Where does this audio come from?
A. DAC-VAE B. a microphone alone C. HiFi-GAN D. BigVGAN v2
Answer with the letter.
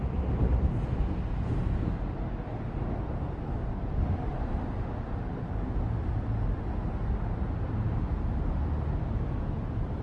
B